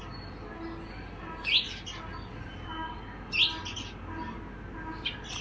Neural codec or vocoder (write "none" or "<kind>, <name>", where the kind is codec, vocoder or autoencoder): none